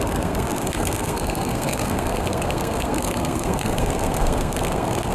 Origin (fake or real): fake